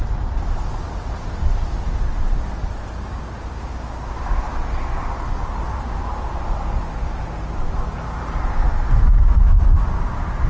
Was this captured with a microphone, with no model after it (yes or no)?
yes